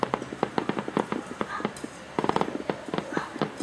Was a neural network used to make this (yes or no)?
no